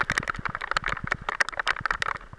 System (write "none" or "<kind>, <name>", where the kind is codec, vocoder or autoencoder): none